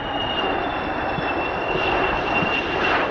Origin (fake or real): real